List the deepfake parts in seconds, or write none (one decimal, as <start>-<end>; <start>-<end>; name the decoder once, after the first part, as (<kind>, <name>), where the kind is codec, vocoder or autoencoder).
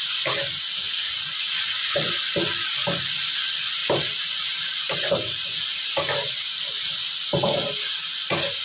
3.8-7.1 (vocoder, BigVGAN v2)